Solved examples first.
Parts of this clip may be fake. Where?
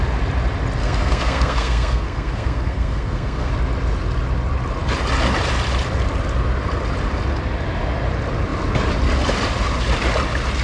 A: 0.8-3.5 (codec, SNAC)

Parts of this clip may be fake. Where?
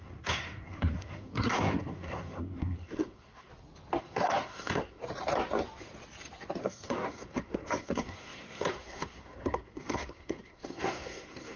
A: 0.0-3.5 (codec, SNAC); 4.0-5.0; 6.6-11.6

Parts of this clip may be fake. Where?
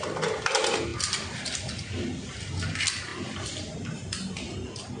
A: none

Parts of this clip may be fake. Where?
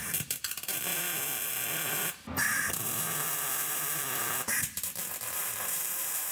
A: 0.0-0.9 (vocoder, BigVGAN v2); 2.7-6.3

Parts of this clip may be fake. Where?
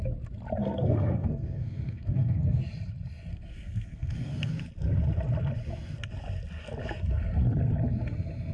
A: 0.6-2.6 (codec, SNAC); 3.3-4.5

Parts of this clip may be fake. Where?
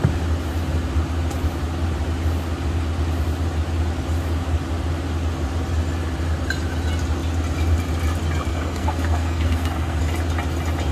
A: 8.5-10.0 (codec, SNAC)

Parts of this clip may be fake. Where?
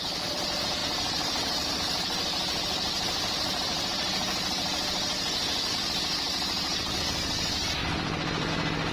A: 7.8-8.5 (vocoder, BigVGAN v2)